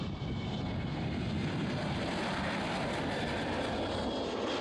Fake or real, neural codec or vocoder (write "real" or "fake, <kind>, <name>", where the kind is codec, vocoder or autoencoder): real